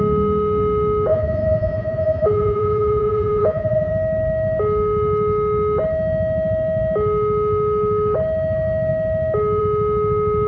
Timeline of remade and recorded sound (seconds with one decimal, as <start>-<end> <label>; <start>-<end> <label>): 0.0-1.1 recorded; 1.1-3.9 remade; 3.9-10.5 recorded